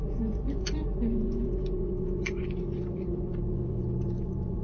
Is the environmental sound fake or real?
fake